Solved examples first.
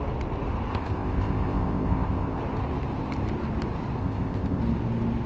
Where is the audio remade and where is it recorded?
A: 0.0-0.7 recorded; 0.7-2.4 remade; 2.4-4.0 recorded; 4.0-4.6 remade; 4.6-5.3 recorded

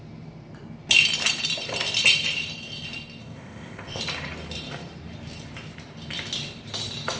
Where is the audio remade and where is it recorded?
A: 0.0-3.2 recorded; 3.2-4.0 remade; 4.0-7.2 recorded

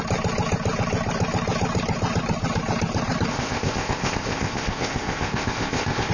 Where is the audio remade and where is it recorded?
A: 0.0-3.3 recorded; 3.3-6.1 remade

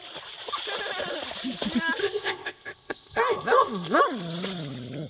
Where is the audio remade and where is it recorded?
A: 0.0-2.0 recorded; 2.0-4.0 remade; 4.0-5.1 recorded

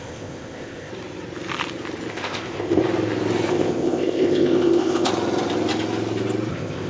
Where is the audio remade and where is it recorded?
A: 0.0-0.9 remade; 0.9-2.1 recorded; 2.1-2.8 remade; 2.8-3.5 recorded; 3.5-5.1 remade; 5.1-6.5 recorded; 6.5-6.9 remade

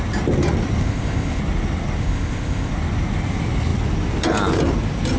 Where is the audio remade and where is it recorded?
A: 0.0-0.8 recorded; 0.8-1.4 remade; 1.4-2.0 recorded; 2.0-2.7 remade; 2.7-5.2 recorded

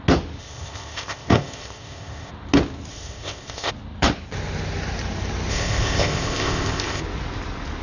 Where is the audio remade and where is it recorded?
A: 0.0-0.4 recorded; 0.4-2.3 remade; 2.3-2.9 recorded; 2.9-3.7 remade; 3.7-5.5 recorded; 5.5-7.0 remade; 7.0-7.8 recorded

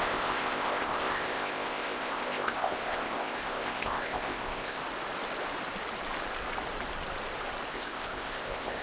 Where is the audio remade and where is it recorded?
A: 0.0-4.8 remade; 4.8-7.7 recorded; 7.7-8.8 remade